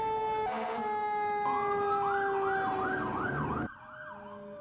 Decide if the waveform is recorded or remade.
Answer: recorded